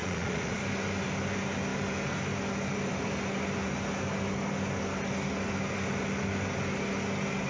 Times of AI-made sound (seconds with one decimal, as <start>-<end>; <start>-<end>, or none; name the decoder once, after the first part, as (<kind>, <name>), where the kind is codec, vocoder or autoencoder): 0.0-0.6 (vocoder, Vocos)